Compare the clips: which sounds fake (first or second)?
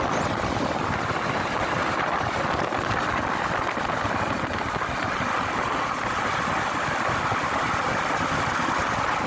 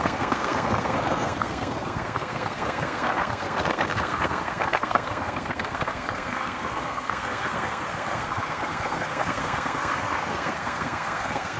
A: second